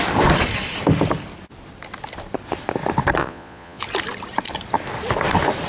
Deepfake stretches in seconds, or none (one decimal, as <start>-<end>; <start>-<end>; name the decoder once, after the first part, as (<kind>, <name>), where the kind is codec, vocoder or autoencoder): 3.2-3.8 (vocoder, Vocos)